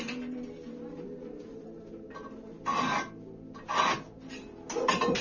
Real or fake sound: real